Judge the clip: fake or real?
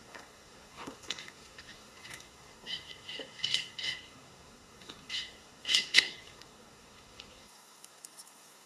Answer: fake